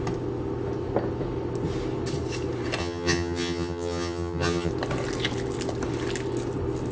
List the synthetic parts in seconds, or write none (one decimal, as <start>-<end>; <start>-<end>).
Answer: 2.8-4.7